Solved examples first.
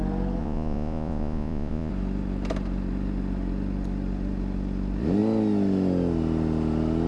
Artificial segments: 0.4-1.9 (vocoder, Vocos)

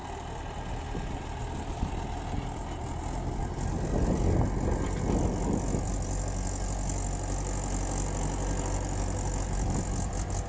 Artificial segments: none

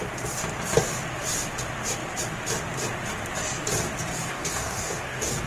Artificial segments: 4.3-5.5 (codec, DAC)

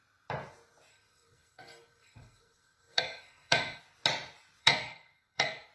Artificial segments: 0.9-3.8 (codec, SNAC); 4.6-5.7

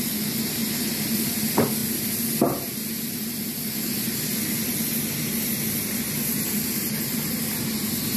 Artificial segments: 0.6-1.4 (vocoder, BigVGAN v2)

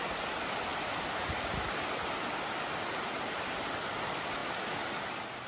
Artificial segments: none

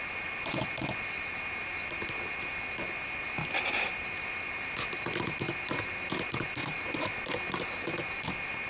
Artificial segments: none

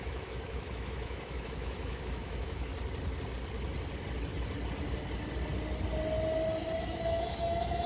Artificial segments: 0.0-2.7 (autoencoder, DAC-VAE); 6.8-7.9